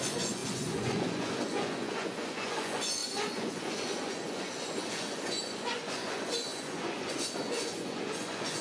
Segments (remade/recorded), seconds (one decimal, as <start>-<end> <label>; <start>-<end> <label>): 0.0-8.6 remade